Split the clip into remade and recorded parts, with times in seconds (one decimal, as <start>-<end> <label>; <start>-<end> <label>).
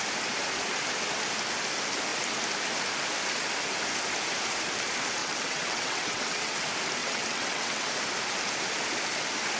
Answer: 0.0-5.2 recorded; 5.2-6.6 remade; 6.6-7.0 recorded; 7.0-7.9 remade; 7.9-9.6 recorded